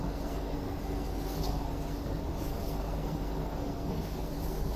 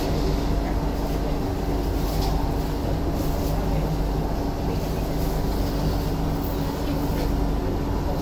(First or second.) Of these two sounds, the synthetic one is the first